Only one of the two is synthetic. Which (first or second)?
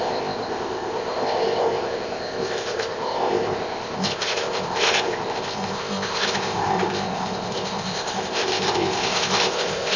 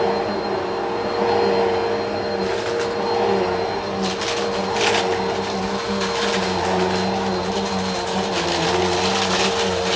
first